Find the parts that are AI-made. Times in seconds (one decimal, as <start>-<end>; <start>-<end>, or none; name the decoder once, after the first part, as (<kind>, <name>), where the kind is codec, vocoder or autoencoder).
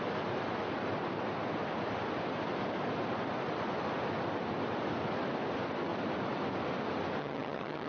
7.2-7.9 (vocoder, HiFi-GAN)